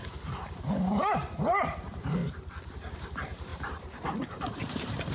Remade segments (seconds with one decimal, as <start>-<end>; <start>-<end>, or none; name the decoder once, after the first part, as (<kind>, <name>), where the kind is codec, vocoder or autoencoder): 0.0-2.2 (vocoder, BigVGAN v2); 2.9-5.1